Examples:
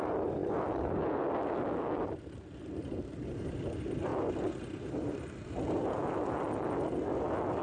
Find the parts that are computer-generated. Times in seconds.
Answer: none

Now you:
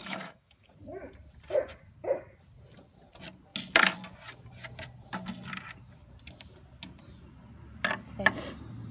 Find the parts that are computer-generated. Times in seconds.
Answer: 0.0-0.7 (autoencoder, DAC-VAE)

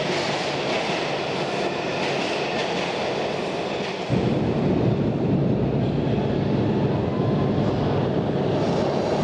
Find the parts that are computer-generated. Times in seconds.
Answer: none

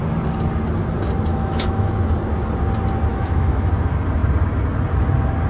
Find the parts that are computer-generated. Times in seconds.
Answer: 1.3-1.9 (autoencoder, DAC-VAE); 3.1-3.7

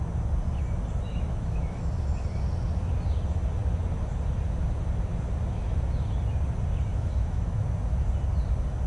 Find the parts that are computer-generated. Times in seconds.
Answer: 1.1-1.9 (autoencoder, DAC-VAE); 6.9-7.6

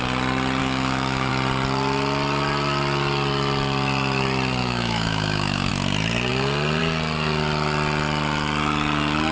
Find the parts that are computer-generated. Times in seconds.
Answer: 0.6-1.3 (autoencoder, DAC-VAE); 4.6-5.7